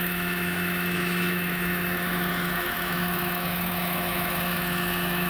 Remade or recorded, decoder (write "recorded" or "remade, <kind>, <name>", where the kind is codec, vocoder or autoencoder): remade, autoencoder, DAC-VAE